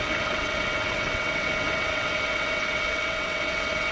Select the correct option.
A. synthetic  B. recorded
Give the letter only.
A